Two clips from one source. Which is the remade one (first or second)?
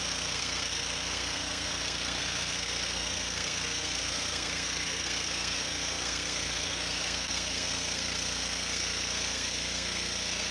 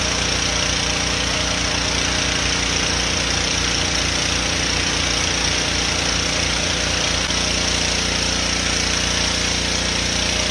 first